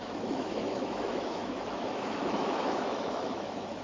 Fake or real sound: fake